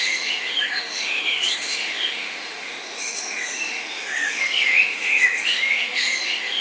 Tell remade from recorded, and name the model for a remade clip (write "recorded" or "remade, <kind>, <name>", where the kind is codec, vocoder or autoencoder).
remade, autoencoder, DAC-VAE